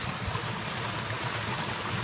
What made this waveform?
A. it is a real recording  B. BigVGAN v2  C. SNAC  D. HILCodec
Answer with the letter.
A